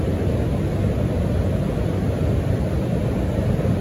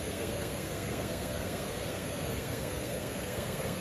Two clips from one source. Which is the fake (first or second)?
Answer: second